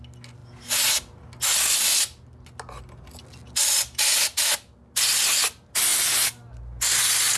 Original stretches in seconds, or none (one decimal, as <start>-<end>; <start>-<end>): 0.0-7.4